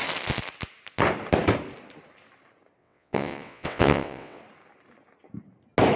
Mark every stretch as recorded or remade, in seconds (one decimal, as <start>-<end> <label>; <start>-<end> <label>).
0.0-2.8 recorded; 2.8-4.4 remade; 4.4-6.0 recorded